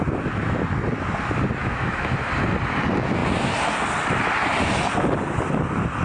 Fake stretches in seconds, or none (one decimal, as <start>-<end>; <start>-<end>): 1.6-2.3